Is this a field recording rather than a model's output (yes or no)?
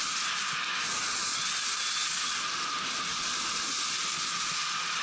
yes